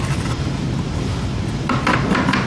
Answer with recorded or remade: recorded